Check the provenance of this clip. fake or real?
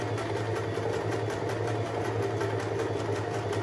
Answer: real